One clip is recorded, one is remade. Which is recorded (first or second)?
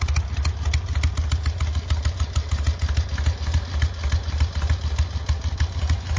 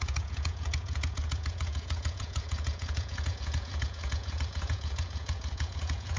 first